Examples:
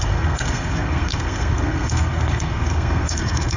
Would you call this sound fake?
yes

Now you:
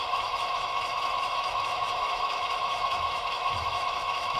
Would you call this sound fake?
yes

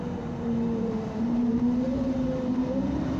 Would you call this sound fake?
yes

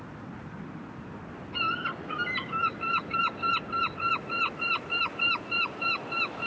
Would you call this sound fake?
no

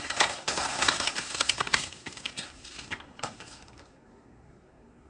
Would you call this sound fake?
yes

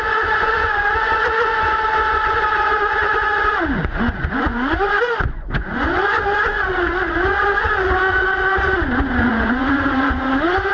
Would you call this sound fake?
yes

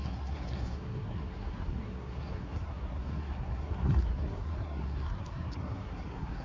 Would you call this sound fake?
yes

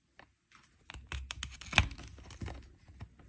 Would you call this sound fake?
no